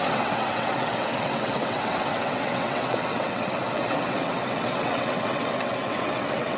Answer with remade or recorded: remade